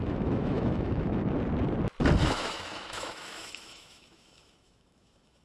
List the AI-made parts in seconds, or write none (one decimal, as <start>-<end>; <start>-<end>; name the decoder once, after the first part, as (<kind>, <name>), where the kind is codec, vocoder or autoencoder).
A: 0.0-1.2 (autoencoder, DAC-VAE); 2.2-5.4